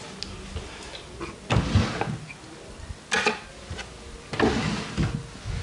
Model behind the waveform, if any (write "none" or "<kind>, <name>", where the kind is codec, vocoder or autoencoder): none